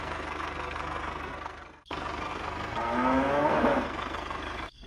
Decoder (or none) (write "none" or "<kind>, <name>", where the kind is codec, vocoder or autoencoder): codec, SNAC